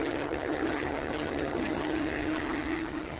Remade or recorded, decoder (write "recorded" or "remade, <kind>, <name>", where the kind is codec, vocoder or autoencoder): remade, vocoder, HiFi-GAN